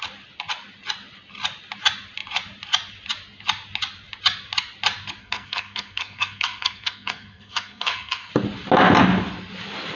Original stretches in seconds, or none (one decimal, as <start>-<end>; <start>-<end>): 0.0-5.2; 8.3-10.0